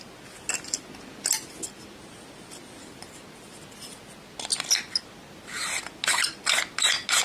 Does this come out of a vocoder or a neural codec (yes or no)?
no